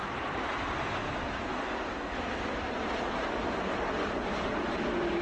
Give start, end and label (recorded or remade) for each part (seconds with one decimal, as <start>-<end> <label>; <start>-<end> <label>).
0.0-5.2 recorded